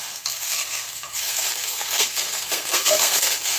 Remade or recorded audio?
remade